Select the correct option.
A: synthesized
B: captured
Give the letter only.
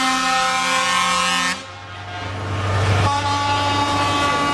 B